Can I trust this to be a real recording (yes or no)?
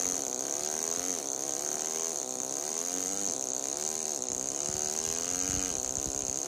yes